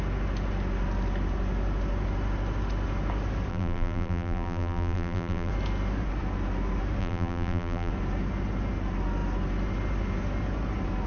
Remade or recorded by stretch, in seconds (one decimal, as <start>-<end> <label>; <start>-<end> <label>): 0.0-3.5 recorded; 3.5-5.5 remade; 5.5-7.0 recorded; 7.0-7.9 remade; 7.9-11.1 recorded